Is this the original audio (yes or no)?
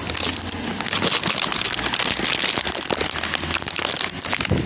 yes